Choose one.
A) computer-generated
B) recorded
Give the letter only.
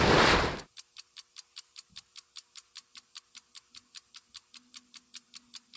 B